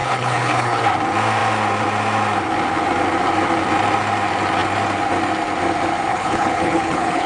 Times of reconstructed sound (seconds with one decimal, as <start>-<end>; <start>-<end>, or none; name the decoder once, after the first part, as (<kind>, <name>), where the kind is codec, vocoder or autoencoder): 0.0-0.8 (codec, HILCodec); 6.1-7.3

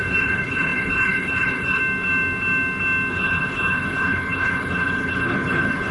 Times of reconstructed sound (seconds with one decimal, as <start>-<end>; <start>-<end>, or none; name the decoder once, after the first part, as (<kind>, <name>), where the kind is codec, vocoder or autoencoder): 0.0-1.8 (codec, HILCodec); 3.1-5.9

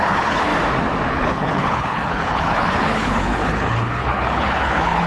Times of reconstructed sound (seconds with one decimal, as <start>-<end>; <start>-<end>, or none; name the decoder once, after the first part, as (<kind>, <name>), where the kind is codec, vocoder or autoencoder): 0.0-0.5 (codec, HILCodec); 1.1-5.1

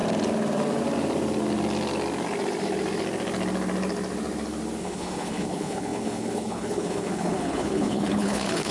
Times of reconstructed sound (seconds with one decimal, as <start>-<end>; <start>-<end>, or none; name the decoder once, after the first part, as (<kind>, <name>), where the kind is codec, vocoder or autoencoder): 4.8-8.7 (codec, HILCodec)

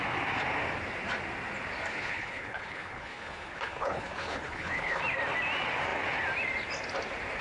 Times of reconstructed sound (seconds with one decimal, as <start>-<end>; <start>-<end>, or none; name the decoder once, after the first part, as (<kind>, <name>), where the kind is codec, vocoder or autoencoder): 1.9-5.0 (codec, HILCodec)

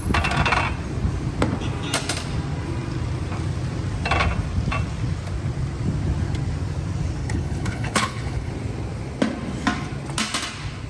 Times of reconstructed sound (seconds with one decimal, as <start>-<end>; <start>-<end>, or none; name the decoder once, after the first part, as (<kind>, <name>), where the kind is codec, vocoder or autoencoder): 7.2-8.5 (codec, HILCodec)